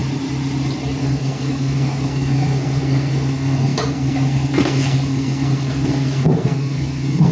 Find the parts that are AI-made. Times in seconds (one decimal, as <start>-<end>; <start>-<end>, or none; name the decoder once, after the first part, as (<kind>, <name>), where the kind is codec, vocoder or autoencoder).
1.0-7.3 (codec, SNAC)

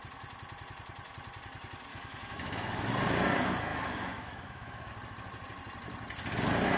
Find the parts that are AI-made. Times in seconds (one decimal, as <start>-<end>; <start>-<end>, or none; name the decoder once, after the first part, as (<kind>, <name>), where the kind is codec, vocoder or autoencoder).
1.9-2.9 (autoencoder, DAC-VAE); 3.7-4.9